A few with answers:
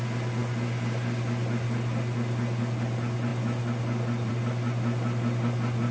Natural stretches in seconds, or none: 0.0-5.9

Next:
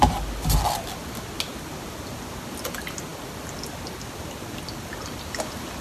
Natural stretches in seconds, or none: 0.0-5.8

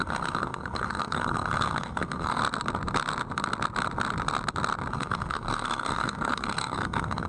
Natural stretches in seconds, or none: 2.4-4.9

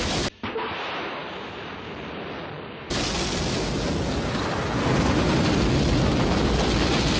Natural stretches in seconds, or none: 0.0-7.2